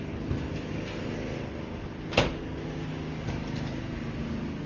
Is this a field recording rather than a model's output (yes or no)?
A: yes